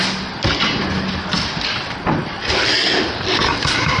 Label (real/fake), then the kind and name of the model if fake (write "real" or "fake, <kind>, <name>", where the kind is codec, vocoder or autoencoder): real